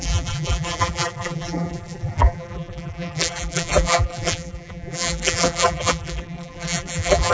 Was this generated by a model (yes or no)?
yes